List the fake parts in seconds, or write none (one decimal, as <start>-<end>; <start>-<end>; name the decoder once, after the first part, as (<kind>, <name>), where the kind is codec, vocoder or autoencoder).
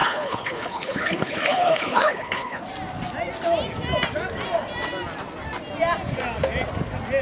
0.0-2.6 (codec, HILCodec)